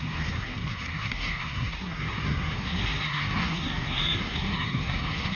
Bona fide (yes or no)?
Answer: no